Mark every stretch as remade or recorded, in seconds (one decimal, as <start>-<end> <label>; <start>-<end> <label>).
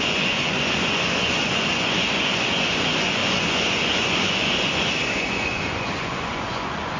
0.0-7.0 remade